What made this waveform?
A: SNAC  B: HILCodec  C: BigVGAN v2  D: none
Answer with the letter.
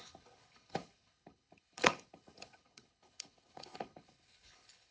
B